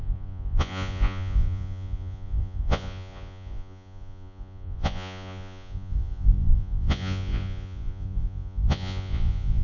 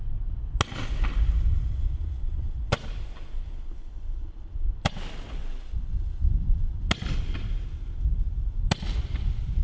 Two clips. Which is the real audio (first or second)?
second